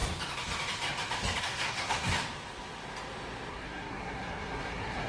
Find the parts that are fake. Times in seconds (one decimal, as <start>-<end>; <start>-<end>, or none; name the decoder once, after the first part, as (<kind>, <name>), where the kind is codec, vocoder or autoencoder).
1.4-2.1 (codec, SNAC); 3.5-5.1